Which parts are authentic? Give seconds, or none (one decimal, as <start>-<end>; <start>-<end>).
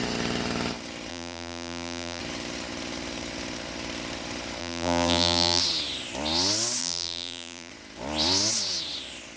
0.0-1.1; 2.2-4.6; 5.6-6.8; 7.7-9.4